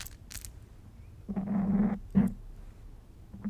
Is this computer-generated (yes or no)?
no